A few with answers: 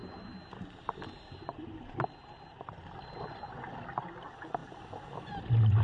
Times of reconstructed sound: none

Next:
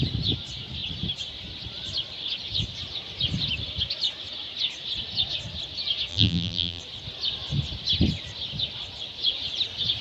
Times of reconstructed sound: 6.1-6.8 (vocoder, BigVGAN v2)

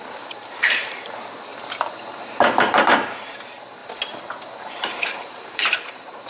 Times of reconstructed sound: 0.0-1.5 (vocoder, BigVGAN v2); 2.6-3.8; 4.4-6.3

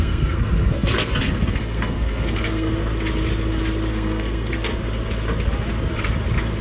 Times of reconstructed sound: 0.0-2.8 (codec, SNAC); 3.9-4.7

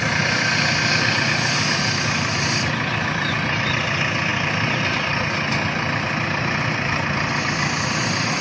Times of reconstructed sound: none

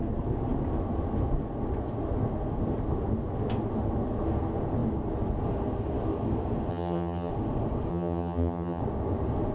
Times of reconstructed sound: 6.7-7.3 (vocoder, HiFi-GAN); 7.9-8.8

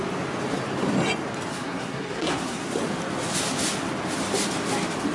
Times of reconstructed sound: 1.5-2.6 (codec, SNAC)